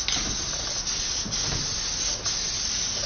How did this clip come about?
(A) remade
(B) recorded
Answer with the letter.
B